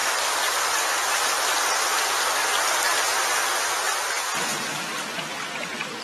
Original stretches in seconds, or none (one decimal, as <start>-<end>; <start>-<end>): 0.0-6.0